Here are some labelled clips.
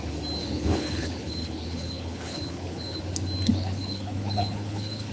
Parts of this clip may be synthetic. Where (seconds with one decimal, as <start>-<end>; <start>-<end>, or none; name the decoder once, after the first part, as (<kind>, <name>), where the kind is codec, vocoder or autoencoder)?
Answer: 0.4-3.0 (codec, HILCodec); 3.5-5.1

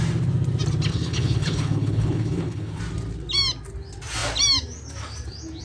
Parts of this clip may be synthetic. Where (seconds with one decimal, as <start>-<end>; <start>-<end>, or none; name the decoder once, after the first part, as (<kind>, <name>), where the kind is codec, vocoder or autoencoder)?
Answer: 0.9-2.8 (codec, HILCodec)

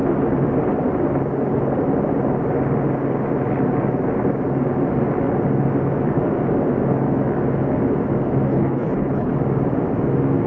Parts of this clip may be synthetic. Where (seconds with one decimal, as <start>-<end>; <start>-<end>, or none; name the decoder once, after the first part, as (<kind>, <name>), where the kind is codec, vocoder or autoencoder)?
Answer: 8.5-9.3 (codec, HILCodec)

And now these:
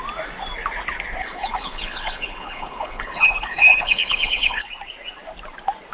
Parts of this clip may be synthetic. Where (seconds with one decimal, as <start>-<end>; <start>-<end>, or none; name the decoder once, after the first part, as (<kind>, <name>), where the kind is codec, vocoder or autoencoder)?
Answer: 1.2-4.7 (codec, HILCodec)